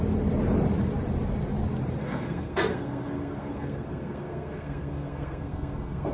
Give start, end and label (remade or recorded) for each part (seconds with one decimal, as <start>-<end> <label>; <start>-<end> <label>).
0.0-2.0 recorded; 2.0-6.1 remade